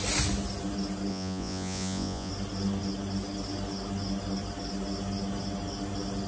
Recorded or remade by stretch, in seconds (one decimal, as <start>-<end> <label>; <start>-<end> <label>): 0.0-1.1 recorded; 1.1-2.3 remade; 2.3-6.3 recorded